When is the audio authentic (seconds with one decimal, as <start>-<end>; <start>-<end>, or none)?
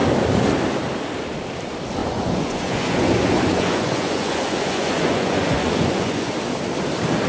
0.0-2.0; 6.3-7.3